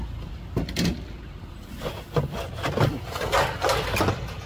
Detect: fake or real real